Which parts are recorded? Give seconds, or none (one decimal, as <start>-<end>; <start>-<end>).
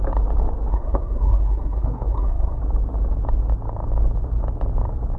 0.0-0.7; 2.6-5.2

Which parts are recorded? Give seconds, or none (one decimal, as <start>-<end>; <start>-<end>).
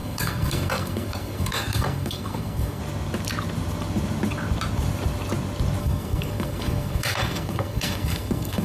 2.8-5.8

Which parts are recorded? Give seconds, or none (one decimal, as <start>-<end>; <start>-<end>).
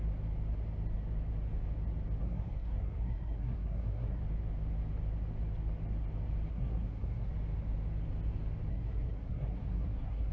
0.0-2.2; 4.2-6.5; 7.3-8.7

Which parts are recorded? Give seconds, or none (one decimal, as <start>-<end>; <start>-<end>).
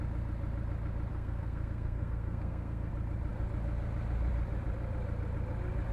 0.0-1.1; 2.9-5.9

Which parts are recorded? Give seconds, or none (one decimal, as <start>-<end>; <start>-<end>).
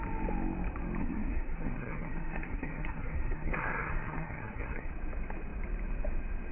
0.0-1.0; 4.9-6.5